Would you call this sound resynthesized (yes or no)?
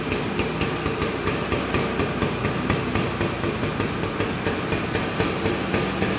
no